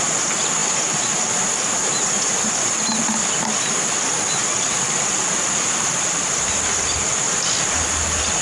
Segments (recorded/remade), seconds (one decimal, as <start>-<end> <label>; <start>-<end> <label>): 0.0-4.4 recorded; 4.4-7.3 remade; 7.3-8.4 recorded